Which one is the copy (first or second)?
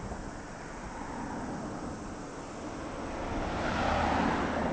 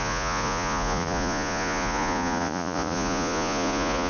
second